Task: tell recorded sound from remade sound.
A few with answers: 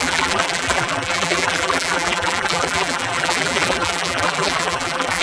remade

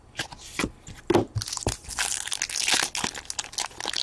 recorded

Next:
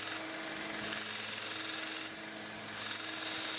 recorded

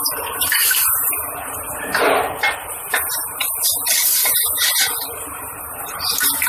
remade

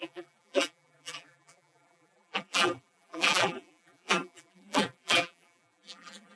remade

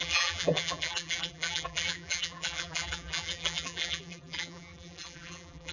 remade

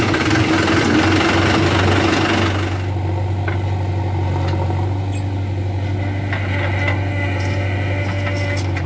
recorded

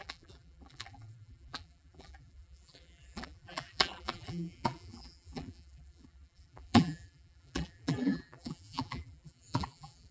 remade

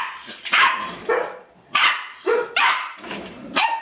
remade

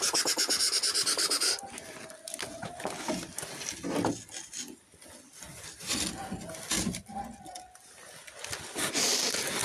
recorded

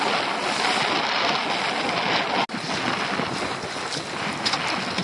recorded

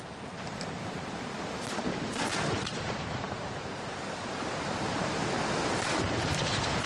remade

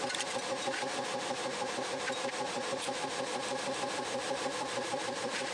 remade